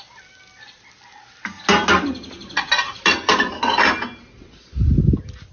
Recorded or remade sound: recorded